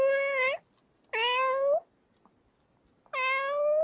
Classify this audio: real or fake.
real